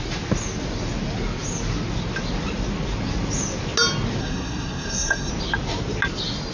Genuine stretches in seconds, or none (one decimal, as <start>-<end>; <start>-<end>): 0.0-4.2; 5.3-6.5